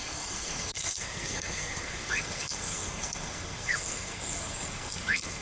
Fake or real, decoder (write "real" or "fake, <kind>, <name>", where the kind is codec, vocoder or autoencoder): fake, codec, SNAC